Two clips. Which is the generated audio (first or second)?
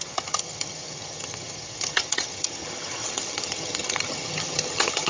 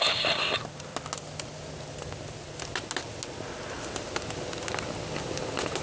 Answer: first